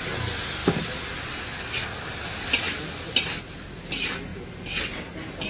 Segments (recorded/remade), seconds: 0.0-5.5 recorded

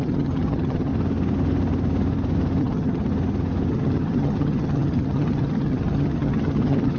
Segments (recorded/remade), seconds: 0.0-0.9 remade; 0.9-2.6 recorded; 2.6-3.1 remade; 3.1-3.7 recorded; 3.7-7.0 remade

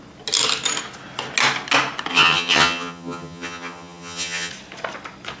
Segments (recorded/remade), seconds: 0.0-2.1 recorded; 2.1-4.5 remade; 4.5-5.4 recorded

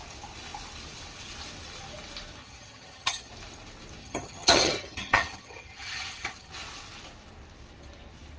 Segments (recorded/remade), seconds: 0.0-2.4 recorded; 2.4-3.3 remade; 3.3-4.0 recorded; 4.0-6.5 remade; 6.5-8.4 recorded

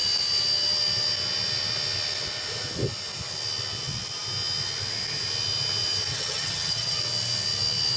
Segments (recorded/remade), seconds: 0.0-6.1 recorded; 6.1-7.0 remade; 7.0-8.0 recorded

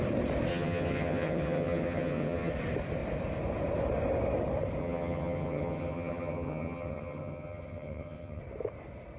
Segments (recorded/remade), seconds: 0.0-0.5 recorded; 0.5-2.5 remade; 2.5-4.8 recorded; 4.8-8.4 remade; 8.4-9.2 recorded